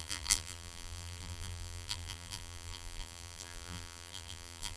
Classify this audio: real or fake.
fake